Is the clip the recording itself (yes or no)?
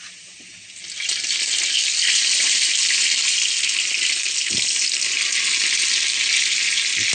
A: yes